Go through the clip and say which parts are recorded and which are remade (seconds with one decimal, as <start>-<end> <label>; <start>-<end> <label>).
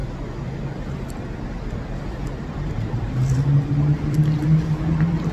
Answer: 0.0-5.3 recorded